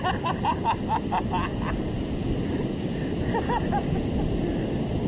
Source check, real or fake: real